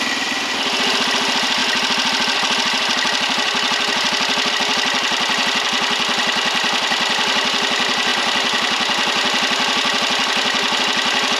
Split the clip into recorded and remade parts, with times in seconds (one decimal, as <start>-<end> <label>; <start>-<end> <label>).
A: 0.0-11.4 recorded